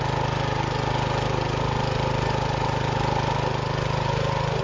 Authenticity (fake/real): real